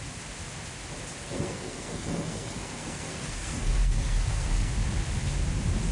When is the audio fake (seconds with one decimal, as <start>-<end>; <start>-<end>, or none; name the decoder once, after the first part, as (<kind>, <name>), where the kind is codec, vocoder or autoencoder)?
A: 1.2-4.7 (codec, SNAC)